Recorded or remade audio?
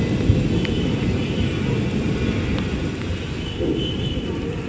recorded